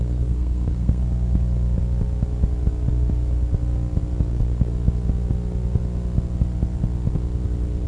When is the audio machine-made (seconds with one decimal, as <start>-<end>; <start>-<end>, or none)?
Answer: 0.0-1.0; 4.3-4.7